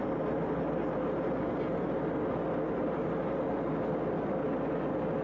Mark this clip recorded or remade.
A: recorded